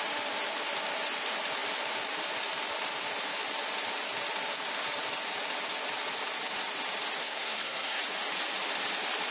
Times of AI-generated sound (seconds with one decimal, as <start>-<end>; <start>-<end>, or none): 7.2-8.0

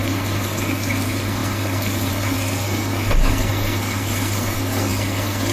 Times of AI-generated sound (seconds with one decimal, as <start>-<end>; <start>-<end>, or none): 0.0-5.5

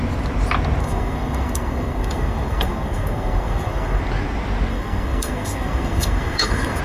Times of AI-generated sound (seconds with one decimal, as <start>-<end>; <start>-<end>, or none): 0.8-4.0; 4.7-6.8